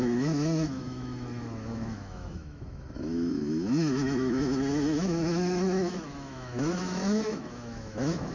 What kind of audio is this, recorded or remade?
remade